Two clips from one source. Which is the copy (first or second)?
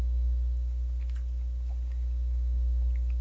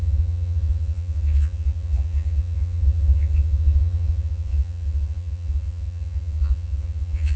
second